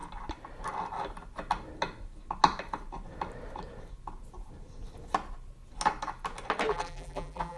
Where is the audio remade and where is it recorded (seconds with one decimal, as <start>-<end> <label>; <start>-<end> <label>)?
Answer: 0.0-6.7 recorded; 6.7-7.6 remade